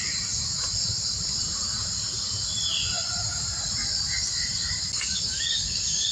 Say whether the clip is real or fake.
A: real